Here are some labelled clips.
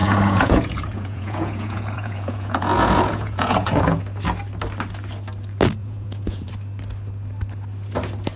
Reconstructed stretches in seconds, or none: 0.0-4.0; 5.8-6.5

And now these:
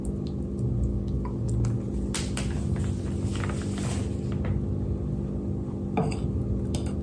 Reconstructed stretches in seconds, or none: 0.9-1.5

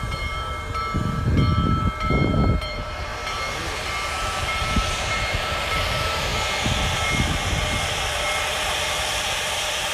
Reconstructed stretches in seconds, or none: 0.0-6.3; 8.5-9.9

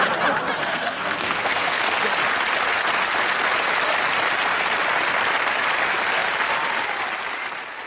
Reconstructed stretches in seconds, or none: 0.6-1.8

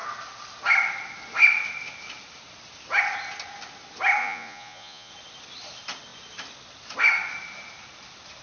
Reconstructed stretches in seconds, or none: 4.2-5.1